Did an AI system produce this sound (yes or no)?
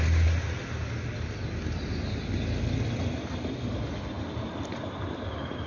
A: no